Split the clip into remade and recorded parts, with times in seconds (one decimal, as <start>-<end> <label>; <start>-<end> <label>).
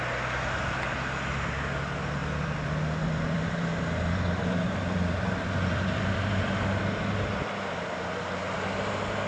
0.0-2.2 recorded; 2.2-6.8 remade; 6.8-8.4 recorded; 8.4-8.9 remade; 8.9-9.3 recorded